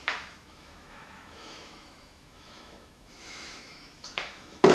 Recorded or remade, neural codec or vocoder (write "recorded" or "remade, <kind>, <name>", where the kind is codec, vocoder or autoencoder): remade, autoencoder, DAC-VAE